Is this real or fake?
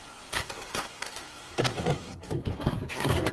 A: fake